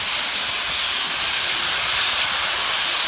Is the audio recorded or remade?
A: recorded